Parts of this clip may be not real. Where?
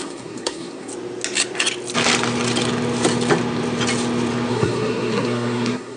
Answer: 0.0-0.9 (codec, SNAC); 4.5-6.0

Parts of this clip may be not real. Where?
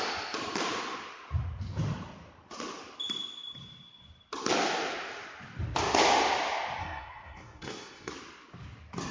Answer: 6.8-8.1 (codec, SNAC)